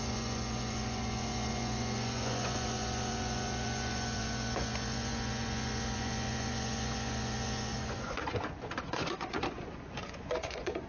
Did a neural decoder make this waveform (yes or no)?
yes